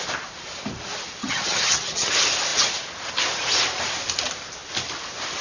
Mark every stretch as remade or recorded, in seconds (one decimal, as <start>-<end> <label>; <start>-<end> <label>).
0.0-1.2 recorded; 1.2-2.1 remade; 2.1-5.4 recorded